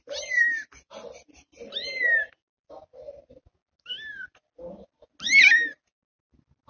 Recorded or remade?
recorded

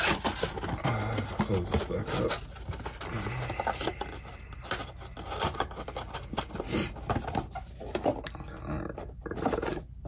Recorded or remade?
recorded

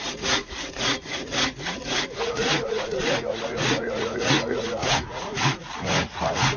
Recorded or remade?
remade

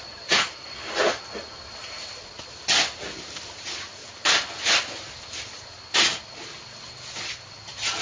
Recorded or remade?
recorded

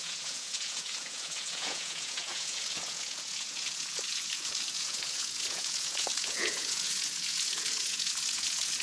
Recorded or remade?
remade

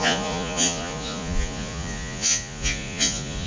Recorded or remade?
remade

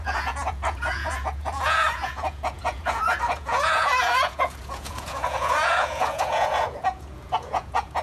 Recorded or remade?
remade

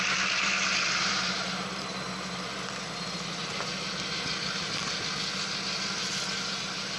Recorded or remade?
recorded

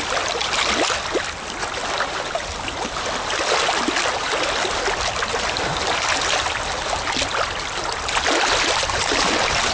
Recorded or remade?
recorded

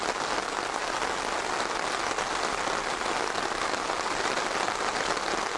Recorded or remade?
recorded